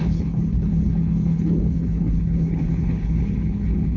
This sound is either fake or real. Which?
fake